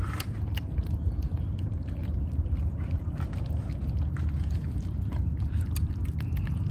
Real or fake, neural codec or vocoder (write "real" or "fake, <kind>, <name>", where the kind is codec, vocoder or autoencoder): fake, vocoder, BigVGAN v2